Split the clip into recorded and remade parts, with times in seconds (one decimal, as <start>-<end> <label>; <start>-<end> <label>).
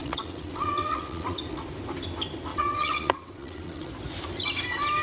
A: 0.0-1.6 remade; 1.6-2.5 recorded; 2.5-3.9 remade; 3.9-5.0 recorded